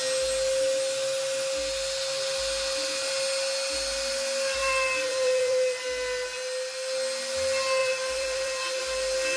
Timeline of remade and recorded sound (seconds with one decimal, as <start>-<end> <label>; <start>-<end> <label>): 0.0-4.6 recorded; 4.6-5.8 remade; 5.8-7.8 recorded; 7.8-8.8 remade; 8.8-9.4 recorded